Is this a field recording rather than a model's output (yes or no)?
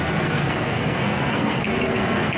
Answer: no